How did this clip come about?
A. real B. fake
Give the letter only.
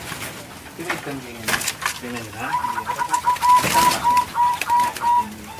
A